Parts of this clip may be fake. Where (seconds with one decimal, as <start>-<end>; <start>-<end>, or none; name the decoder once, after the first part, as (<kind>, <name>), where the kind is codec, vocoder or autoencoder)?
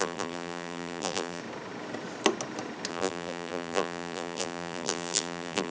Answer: 0.0-1.4 (vocoder, BigVGAN v2); 2.9-5.7